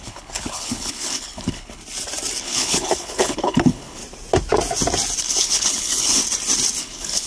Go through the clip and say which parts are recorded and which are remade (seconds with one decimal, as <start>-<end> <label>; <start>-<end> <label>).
0.0-1.8 remade; 1.8-2.4 recorded; 2.4-4.0 remade; 4.0-5.2 recorded; 5.2-6.2 remade; 6.2-6.8 recorded; 6.8-7.3 remade